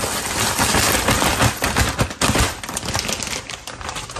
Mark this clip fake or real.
real